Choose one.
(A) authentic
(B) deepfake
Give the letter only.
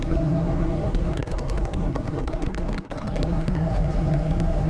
B